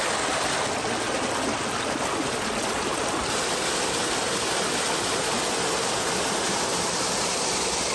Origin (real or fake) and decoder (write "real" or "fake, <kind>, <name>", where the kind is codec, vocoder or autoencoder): real